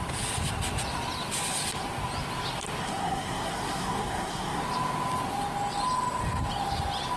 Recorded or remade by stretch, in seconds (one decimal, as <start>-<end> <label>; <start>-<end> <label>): 0.0-2.8 recorded; 2.8-4.6 remade; 4.6-7.2 recorded